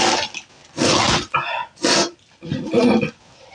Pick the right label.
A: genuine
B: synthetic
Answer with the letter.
A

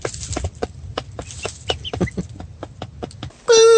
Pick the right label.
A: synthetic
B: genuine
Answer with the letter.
B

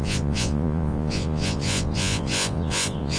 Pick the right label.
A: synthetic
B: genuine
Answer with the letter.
A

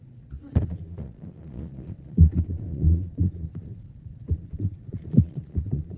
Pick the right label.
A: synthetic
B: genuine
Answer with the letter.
A